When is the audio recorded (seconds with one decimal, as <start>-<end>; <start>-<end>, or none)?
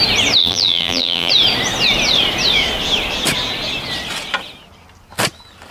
0.0-0.4; 1.3-5.7